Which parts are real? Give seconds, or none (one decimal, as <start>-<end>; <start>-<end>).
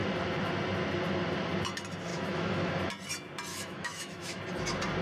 0.0-2.1; 2.7-3.5; 4.4-5.0